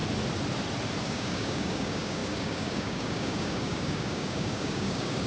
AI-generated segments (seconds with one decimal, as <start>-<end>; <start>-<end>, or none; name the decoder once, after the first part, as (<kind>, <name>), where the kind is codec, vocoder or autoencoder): 1.0-5.3 (codec, DAC)

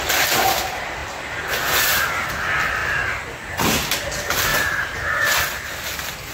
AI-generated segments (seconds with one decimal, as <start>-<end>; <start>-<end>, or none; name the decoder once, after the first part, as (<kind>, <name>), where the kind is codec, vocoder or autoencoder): 2.8-3.3 (vocoder, BigVGAN v2); 4.5-5.6

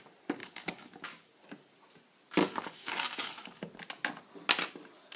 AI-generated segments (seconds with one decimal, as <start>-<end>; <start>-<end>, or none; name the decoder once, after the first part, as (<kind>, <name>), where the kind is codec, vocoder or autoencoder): 0.4-1.3 (codec, DAC); 2.4-3.8

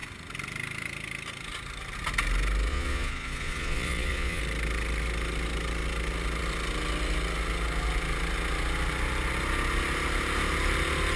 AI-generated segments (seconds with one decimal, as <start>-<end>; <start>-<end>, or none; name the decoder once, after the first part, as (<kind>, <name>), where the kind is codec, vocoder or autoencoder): 2.7-4.4 (vocoder, Vocos)